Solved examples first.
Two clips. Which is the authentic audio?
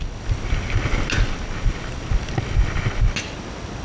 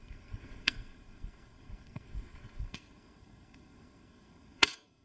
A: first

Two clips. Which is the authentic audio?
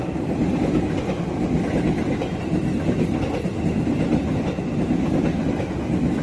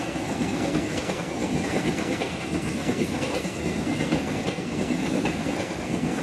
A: first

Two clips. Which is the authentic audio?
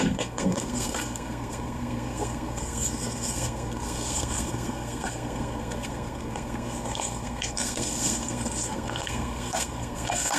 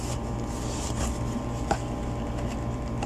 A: second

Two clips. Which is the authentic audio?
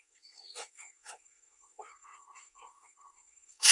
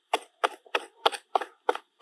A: second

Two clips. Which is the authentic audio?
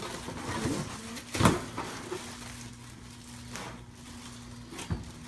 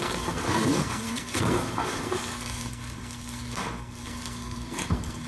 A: first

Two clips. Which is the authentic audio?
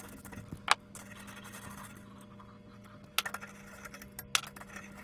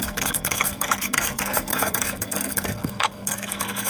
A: first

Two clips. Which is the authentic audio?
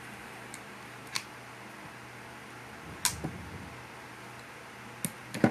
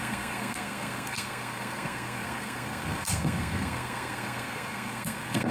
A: first